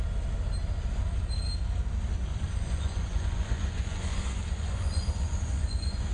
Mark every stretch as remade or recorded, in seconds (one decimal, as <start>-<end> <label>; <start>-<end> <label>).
0.0-2.3 recorded; 2.3-6.1 remade

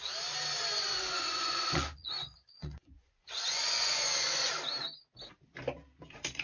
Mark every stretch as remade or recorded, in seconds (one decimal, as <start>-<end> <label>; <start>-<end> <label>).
0.0-0.7 recorded; 0.7-4.5 remade; 4.5-6.4 recorded

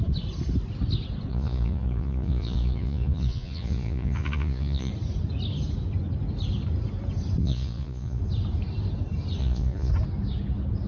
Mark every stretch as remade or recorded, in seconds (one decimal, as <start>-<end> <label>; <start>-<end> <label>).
0.0-1.3 recorded; 1.3-4.9 remade; 4.9-7.4 recorded; 7.4-8.2 remade; 8.2-9.4 recorded; 9.4-9.9 remade; 9.9-10.9 recorded

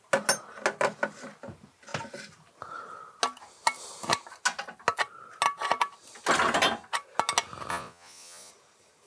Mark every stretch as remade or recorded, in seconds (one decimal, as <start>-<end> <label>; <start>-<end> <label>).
0.0-7.7 recorded; 7.7-8.5 remade; 8.5-9.1 recorded

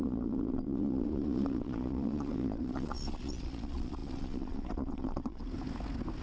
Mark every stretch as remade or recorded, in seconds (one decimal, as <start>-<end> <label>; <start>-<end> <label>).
0.0-5.4 remade; 5.4-6.2 recorded

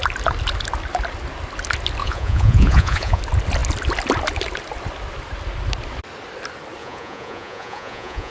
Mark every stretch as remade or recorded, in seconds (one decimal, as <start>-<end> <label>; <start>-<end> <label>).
0.0-2.0 recorded; 2.0-3.2 remade; 3.2-6.8 recorded; 6.8-8.3 remade

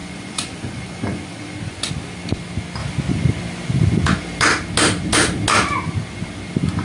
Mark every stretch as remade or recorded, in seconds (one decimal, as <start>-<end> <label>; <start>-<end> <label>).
0.0-1.9 remade; 1.9-6.8 recorded